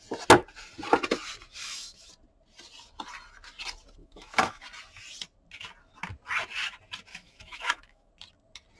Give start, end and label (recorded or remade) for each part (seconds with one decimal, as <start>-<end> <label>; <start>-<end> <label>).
0.0-1.6 recorded; 1.6-2.1 remade; 2.1-4.0 recorded; 4.0-4.6 remade; 4.6-7.1 recorded; 7.1-8.1 remade; 8.1-8.8 recorded

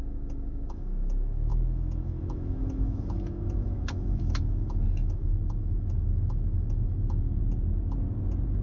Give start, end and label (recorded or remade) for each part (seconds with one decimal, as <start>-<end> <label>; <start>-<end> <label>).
0.0-7.4 remade; 7.4-8.6 recorded

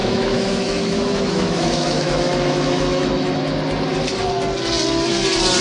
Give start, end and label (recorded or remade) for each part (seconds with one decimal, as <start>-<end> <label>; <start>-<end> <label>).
0.0-3.4 remade; 3.4-5.6 recorded

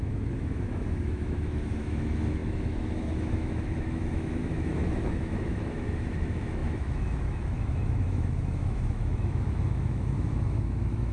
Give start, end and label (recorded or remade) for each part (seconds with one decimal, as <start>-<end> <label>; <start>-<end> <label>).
0.0-11.1 remade

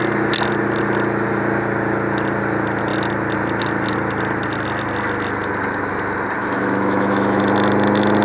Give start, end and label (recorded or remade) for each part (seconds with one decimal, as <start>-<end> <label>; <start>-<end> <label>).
0.0-6.4 recorded; 6.4-7.4 remade; 7.4-8.2 recorded